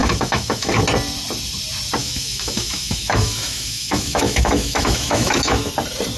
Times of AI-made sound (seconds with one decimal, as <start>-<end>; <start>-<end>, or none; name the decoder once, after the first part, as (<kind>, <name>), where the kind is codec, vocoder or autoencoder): 0.0-0.8 (autoencoder, DAC-VAE); 2.0-5.7

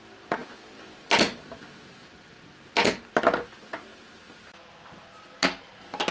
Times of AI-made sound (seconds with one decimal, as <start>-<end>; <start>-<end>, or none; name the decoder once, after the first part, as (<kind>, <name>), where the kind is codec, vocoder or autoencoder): none